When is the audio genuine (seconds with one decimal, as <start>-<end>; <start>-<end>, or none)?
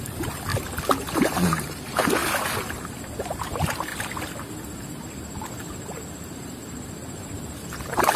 0.5-1.1; 2.2-3.2; 3.9-5.7